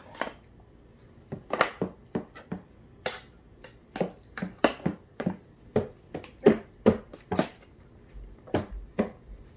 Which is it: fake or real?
real